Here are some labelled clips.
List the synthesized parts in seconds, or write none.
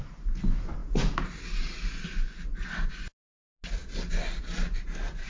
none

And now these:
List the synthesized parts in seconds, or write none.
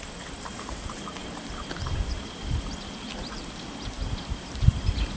none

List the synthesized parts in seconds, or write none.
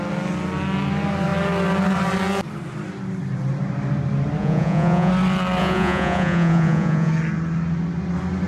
4.4-5.1 (vocoder, Vocos); 5.6-7.1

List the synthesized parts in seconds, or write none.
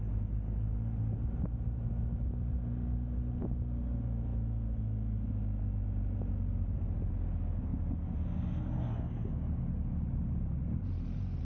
none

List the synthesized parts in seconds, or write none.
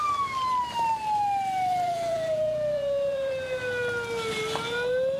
1.7-3.3 (vocoder, Vocos)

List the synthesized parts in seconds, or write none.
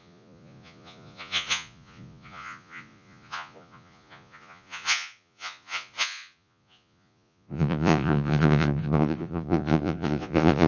0.0-10.7 (vocoder, Vocos)